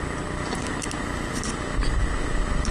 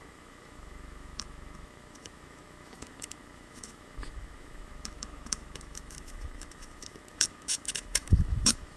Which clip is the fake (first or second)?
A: second